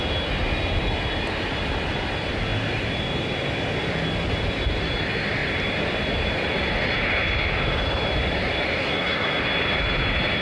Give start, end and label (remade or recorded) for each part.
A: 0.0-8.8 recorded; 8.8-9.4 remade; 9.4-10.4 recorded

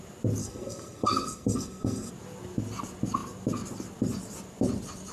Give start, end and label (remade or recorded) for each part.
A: 0.0-0.4 recorded; 0.4-2.1 remade; 2.1-5.1 recorded

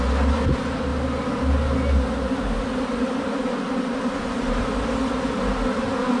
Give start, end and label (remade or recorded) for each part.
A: 0.0-6.2 recorded

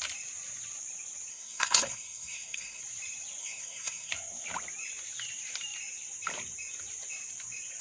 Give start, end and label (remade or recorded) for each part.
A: 0.0-1.3 recorded; 1.3-2.8 remade; 2.8-3.4 recorded; 3.4-4.1 remade; 4.1-7.8 recorded

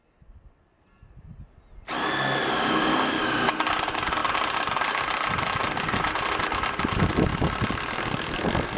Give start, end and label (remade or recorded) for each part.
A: 0.0-8.8 recorded

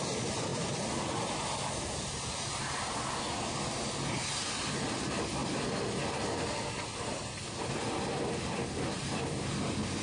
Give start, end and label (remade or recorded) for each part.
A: 0.0-10.0 recorded

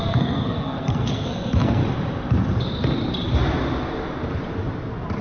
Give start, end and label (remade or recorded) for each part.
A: 0.0-1.8 remade; 1.8-5.2 recorded